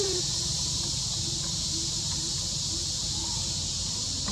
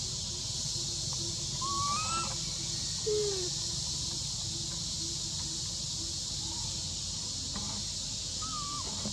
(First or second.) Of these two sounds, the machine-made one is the first